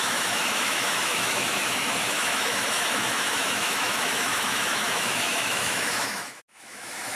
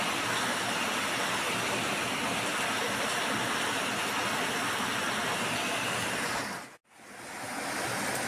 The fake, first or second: first